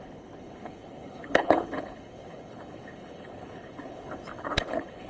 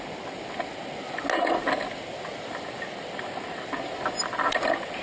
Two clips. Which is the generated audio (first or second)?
first